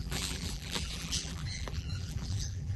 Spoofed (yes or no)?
yes